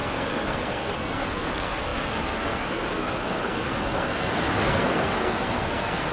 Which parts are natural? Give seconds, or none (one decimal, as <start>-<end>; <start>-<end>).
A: none